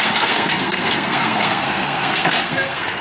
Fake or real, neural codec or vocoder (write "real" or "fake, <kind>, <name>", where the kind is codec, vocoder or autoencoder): fake, codec, SNAC